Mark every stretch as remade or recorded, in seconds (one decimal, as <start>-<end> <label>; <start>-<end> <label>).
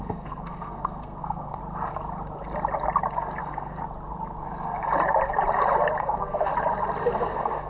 0.0-1.6 remade; 1.6-3.4 recorded; 3.4-3.8 remade; 3.8-6.0 recorded; 6.0-6.5 remade; 6.5-7.2 recorded; 7.2-7.7 remade